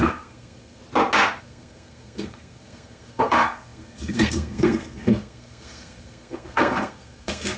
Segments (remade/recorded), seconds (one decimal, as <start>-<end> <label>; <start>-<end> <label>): 0.0-0.8 remade; 0.8-1.4 recorded; 1.4-7.6 remade